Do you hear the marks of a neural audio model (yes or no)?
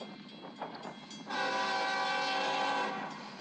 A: no